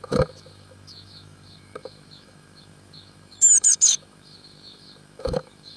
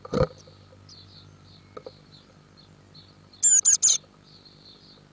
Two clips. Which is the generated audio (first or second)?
first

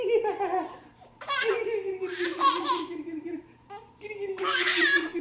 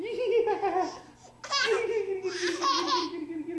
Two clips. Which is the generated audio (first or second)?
first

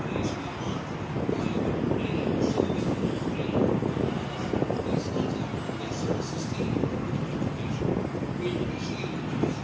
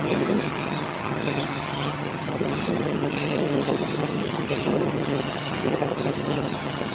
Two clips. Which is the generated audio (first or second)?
second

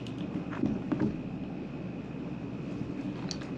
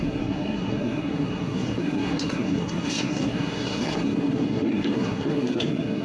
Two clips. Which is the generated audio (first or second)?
second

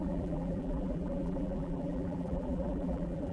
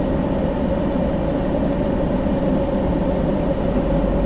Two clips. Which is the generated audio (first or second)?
first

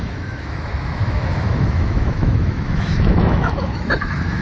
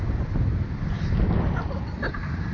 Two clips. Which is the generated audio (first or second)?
first